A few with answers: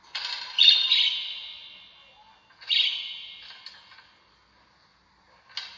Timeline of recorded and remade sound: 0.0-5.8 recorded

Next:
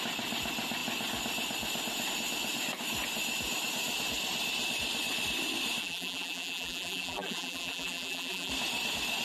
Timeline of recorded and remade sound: 0.0-5.8 recorded; 5.8-8.5 remade; 8.5-9.2 recorded

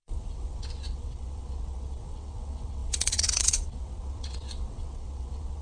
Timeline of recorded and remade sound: 0.0-5.6 remade

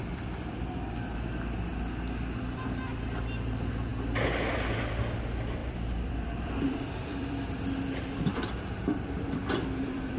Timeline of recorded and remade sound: 0.0-0.5 remade; 0.5-5.6 recorded; 5.6-10.2 remade

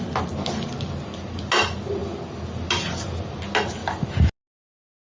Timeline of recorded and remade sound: 0.0-5.0 recorded

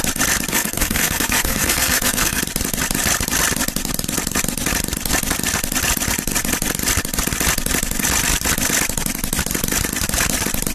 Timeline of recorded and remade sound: 0.0-0.5 recorded; 0.5-2.4 remade; 2.4-10.7 recorded

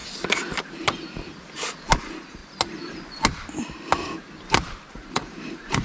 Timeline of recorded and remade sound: 0.0-2.0 recorded; 2.0-2.4 remade; 2.4-4.9 recorded; 4.9-5.8 remade

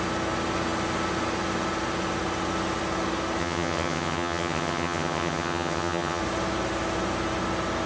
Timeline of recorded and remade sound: 0.0-3.4 recorded; 3.4-6.2 remade; 6.2-7.9 recorded